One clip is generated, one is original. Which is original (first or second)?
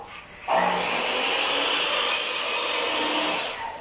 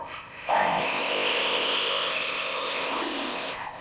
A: first